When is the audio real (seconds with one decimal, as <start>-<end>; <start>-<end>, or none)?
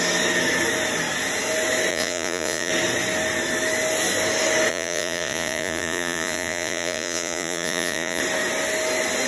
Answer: 0.0-1.9; 2.7-4.7; 8.2-9.3